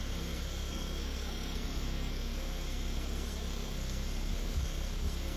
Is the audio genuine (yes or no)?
no